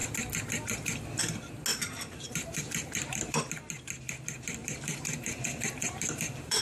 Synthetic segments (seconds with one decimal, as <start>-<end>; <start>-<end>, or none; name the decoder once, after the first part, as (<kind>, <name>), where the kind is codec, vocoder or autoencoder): 1.7-3.4 (vocoder, BigVGAN v2); 4.6-6.6